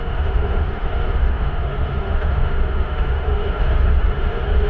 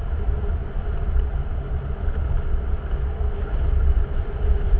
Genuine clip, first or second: second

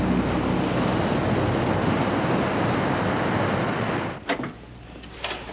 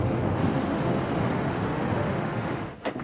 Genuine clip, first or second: first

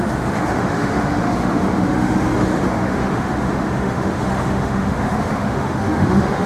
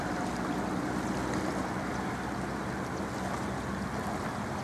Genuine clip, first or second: second